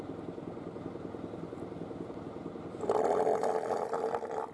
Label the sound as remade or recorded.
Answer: recorded